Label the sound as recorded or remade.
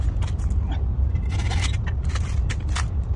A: recorded